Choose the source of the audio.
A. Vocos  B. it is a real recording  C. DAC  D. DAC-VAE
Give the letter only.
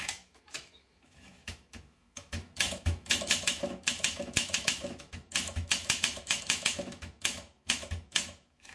D